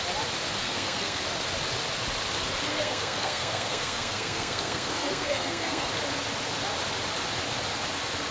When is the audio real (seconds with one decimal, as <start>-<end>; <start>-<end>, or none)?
0.0-0.6; 1.2-2.7; 5.9-8.3